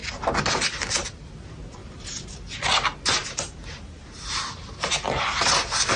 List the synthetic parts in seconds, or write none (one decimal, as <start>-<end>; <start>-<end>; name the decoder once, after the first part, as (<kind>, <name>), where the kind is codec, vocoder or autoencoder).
1.8-2.3 (vocoder, BigVGAN v2); 3.2-4.6